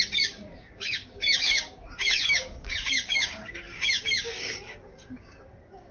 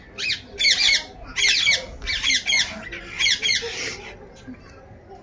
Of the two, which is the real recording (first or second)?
second